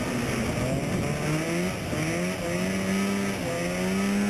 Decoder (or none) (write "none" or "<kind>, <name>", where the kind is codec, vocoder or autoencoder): none